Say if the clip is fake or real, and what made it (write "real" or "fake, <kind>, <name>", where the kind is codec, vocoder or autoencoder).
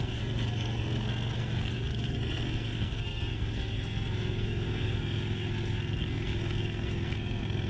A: fake, codec, SNAC